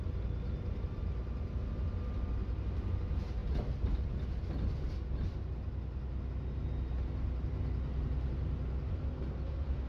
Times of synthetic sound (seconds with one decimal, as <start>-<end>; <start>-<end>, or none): none